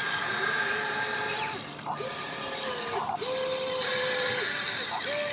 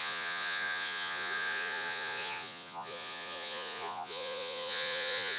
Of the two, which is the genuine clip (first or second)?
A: first